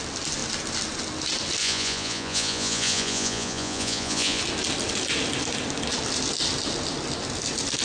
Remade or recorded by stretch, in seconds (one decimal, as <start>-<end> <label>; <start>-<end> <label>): 0.0-1.6 recorded; 1.6-4.4 remade; 4.4-7.8 recorded